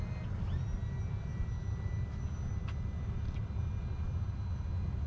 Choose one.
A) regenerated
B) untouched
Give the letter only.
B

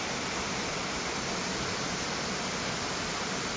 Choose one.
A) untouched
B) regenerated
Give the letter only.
A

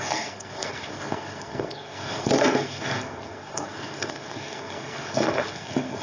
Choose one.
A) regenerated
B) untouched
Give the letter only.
A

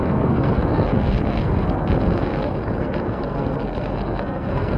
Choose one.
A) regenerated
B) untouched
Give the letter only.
A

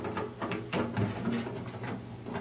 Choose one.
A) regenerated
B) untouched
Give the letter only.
B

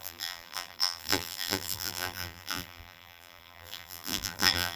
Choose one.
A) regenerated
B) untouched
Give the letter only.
A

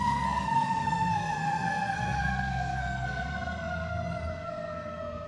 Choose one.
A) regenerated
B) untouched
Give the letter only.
A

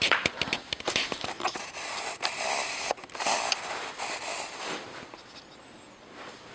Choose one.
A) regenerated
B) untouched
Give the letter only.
B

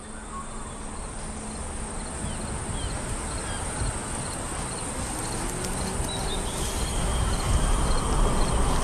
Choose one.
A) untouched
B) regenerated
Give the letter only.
A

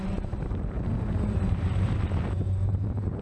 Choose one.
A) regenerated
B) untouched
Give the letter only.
A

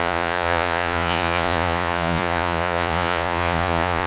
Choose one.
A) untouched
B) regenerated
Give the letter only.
B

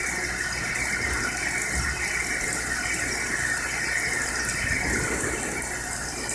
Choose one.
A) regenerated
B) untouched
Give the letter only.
B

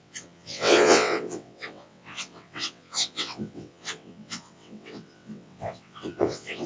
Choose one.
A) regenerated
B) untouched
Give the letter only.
A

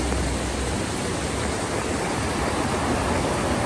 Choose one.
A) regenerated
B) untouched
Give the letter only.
B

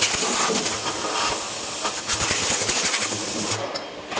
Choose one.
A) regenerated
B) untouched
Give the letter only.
B